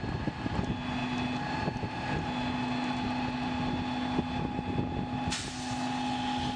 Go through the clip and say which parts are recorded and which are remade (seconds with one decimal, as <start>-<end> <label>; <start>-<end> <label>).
0.0-6.6 recorded